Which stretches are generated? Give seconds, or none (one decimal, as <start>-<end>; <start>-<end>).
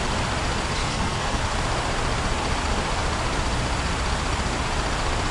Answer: 0.8-1.4